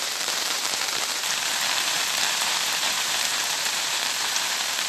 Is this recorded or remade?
remade